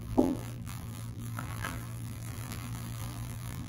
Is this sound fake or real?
fake